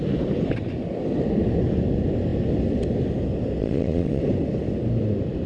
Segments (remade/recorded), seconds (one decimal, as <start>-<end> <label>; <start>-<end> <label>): 0.0-3.6 recorded; 3.6-4.2 remade; 4.2-5.5 recorded